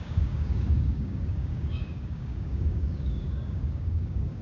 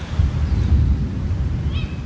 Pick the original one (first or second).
second